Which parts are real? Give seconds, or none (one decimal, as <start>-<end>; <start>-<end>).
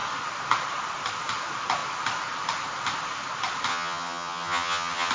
0.0-3.7